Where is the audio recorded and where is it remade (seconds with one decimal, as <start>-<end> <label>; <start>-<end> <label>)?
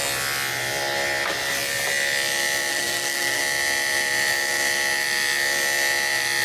0.0-2.7 recorded; 2.7-3.4 remade; 3.4-6.4 recorded